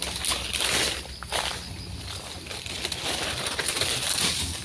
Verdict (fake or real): real